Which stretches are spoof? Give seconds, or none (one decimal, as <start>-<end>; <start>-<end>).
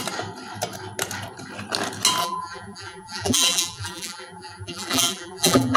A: 2.2-5.8